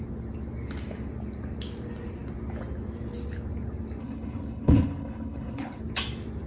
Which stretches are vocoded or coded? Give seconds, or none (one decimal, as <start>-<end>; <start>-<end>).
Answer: 4.0-5.8

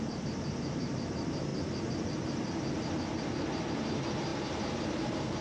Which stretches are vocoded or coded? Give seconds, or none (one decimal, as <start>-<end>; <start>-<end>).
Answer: 0.0-1.5; 3.7-5.4

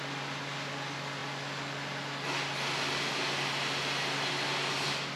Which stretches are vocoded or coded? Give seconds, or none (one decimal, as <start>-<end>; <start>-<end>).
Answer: none

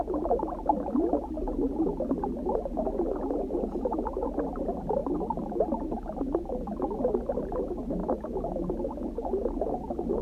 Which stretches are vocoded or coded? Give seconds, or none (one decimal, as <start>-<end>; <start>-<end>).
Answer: 8.0-8.5

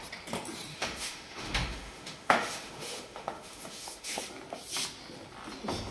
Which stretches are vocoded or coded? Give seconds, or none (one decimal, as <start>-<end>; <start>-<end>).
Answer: 0.7-4.2

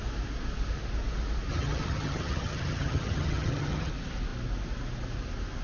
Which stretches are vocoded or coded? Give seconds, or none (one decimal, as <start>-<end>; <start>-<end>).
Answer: 1.5-3.9

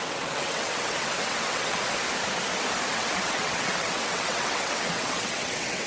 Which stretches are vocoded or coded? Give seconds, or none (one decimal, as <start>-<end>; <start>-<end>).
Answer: 0.0-1.8; 2.9-5.9

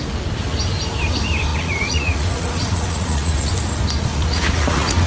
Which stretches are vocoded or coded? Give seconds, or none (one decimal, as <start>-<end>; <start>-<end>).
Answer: 1.5-3.5; 4.1-5.1